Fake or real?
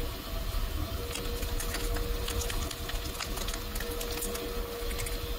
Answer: real